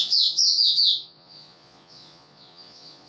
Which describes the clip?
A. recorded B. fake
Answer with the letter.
B